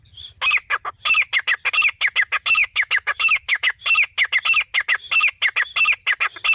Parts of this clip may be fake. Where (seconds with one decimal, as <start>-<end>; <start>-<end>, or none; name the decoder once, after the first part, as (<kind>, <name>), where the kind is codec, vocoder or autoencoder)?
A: 2.6-3.8 (autoencoder, DAC-VAE)